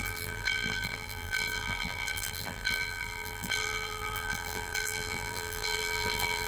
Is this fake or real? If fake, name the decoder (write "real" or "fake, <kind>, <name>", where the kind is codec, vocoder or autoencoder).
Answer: fake, vocoder, BigVGAN v2